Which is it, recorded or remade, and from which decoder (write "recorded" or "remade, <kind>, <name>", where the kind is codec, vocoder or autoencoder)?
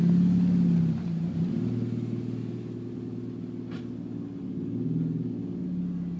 recorded